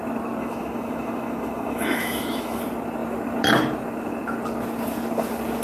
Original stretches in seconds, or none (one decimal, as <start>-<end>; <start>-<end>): 0.0-0.4; 2.6-5.6